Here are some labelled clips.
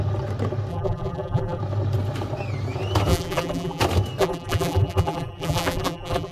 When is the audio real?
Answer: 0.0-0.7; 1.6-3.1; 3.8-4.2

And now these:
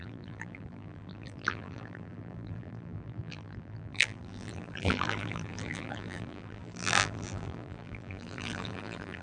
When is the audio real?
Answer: none

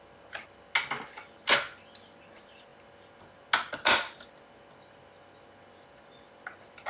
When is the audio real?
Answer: 0.0-6.9